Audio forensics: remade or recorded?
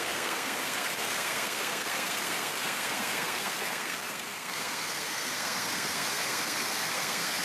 remade